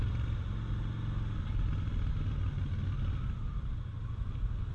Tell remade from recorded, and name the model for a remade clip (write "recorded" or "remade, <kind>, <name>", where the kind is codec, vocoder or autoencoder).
recorded